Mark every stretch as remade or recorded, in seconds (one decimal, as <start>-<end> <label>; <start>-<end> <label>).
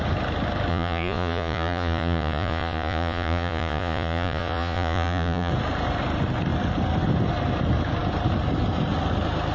0.0-0.7 recorded; 0.7-5.5 remade; 5.5-9.5 recorded